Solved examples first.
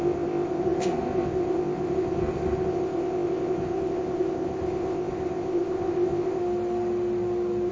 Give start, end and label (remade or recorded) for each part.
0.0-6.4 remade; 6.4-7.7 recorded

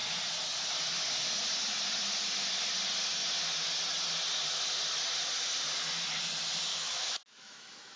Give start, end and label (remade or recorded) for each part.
0.0-6.7 recorded; 6.7-8.0 remade

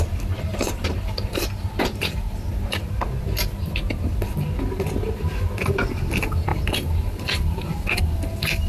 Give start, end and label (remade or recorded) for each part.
0.0-0.5 recorded; 0.5-2.5 remade; 2.5-6.5 recorded; 6.5-8.0 remade; 8.0-8.7 recorded

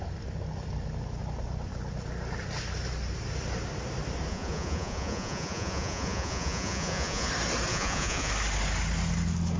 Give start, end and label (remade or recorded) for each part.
0.0-4.3 recorded; 4.3-7.3 remade; 7.3-7.7 recorded; 7.7-8.3 remade; 8.3-9.6 recorded

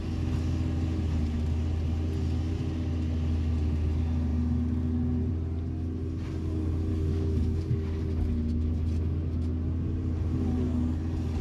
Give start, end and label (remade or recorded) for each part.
0.0-6.9 recorded; 6.9-8.0 remade; 8.0-11.4 recorded